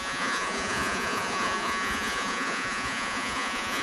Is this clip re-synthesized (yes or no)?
yes